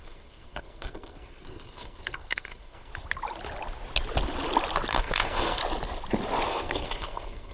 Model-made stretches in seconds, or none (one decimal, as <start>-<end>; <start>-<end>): 0.0-2.9; 4.9-5.6; 6.5-7.5